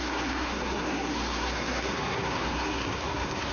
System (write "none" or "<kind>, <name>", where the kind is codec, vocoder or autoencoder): codec, SNAC